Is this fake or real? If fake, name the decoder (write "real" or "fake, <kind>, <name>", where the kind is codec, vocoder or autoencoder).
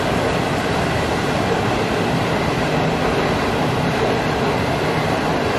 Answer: fake, vocoder, BigVGAN v2